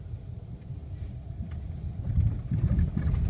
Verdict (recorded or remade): recorded